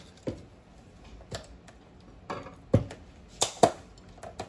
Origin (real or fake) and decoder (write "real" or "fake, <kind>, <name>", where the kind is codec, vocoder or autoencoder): real